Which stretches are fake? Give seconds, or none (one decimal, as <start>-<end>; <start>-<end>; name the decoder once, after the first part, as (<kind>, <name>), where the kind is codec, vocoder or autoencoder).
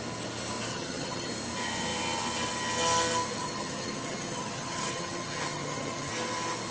0.7-1.3 (vocoder, HiFi-GAN); 3.3-6.1